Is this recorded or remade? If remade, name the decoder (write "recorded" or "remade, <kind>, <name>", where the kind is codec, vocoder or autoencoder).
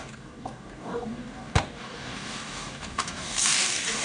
remade, codec, DAC